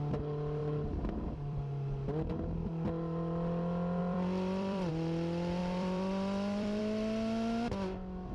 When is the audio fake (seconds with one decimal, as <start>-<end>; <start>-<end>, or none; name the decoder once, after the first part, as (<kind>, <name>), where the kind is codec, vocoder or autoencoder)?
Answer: 0.6-1.6 (vocoder, BigVGAN v2); 4.0-4.9; 5.6-6.8